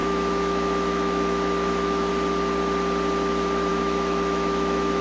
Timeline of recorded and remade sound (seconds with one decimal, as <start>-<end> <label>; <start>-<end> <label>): 0.0-2.1 remade; 2.1-3.7 recorded; 3.7-5.0 remade